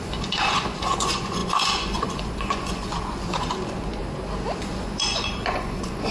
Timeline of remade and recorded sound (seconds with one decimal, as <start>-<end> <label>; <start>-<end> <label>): 0.0-4.0 remade; 4.0-4.6 recorded; 4.6-6.1 remade